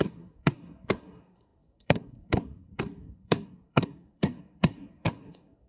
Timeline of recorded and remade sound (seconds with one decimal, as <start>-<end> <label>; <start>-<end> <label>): 0.0-5.7 remade